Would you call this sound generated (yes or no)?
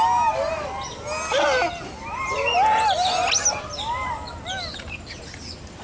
no